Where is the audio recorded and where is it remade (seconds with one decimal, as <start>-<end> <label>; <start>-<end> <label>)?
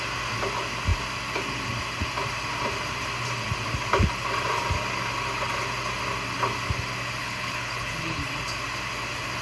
0.0-7.2 recorded; 7.2-8.2 remade; 8.2-9.4 recorded